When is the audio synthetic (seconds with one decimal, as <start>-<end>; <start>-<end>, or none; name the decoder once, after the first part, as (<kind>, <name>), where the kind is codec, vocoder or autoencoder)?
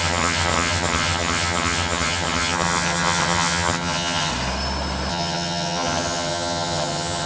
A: 0.0-4.3 (vocoder, HiFi-GAN); 5.1-7.3